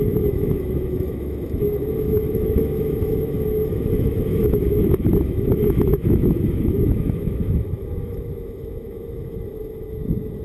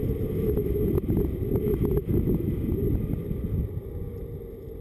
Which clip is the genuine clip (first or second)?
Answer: second